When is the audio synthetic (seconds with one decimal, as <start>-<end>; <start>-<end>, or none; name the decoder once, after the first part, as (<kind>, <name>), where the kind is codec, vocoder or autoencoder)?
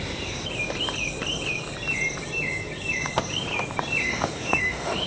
4.0-5.1 (autoencoder, DAC-VAE)